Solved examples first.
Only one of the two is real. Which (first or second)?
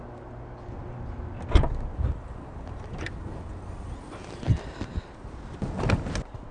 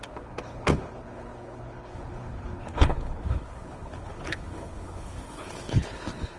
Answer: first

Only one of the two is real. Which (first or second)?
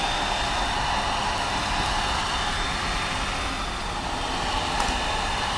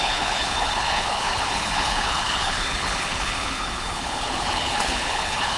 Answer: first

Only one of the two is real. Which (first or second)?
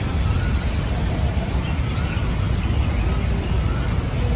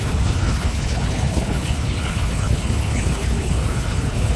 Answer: first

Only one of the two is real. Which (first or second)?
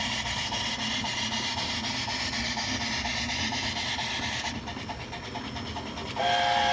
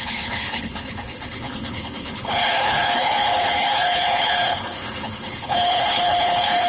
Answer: first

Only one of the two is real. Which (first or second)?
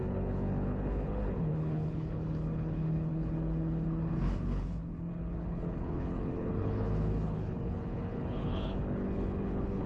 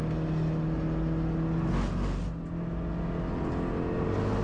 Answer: second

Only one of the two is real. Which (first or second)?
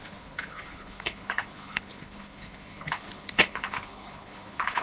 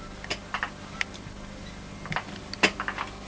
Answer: second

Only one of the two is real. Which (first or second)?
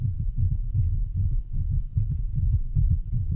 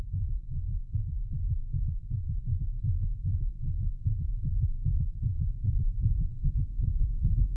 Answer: second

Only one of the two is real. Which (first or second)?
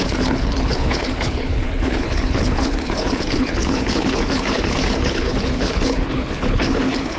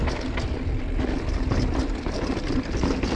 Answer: second